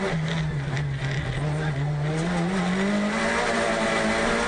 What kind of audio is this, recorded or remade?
recorded